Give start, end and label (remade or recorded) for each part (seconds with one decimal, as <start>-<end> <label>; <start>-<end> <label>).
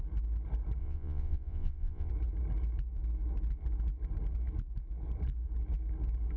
0.0-0.8 recorded; 0.8-2.1 remade; 2.1-6.4 recorded